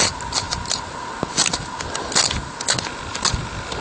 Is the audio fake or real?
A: real